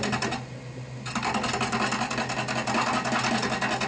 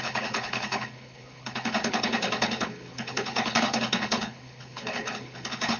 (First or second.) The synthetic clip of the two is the second